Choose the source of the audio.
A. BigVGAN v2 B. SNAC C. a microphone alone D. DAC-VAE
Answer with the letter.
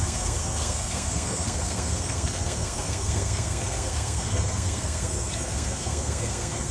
B